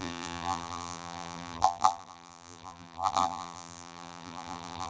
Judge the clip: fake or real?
fake